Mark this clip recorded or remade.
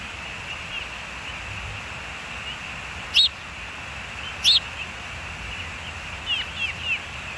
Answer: recorded